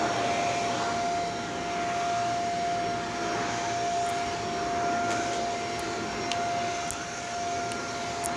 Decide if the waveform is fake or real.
real